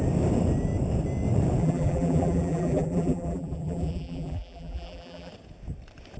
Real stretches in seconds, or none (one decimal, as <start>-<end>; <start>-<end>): 0.0-1.6; 5.3-6.2